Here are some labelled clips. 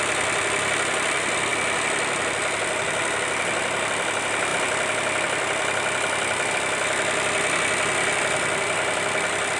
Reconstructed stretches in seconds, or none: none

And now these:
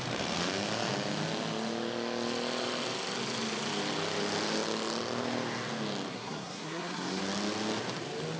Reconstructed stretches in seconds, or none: 6.1-7.2 (codec, SNAC)

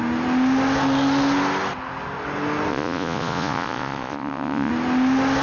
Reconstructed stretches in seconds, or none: 2.7-4.7 (vocoder, Vocos)

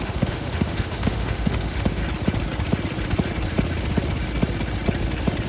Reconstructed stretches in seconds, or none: 0.0-2.0 (autoencoder, DAC-VAE)

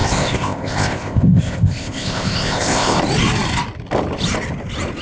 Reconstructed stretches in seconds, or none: 0.0-3.0 (codec, ZipCodec)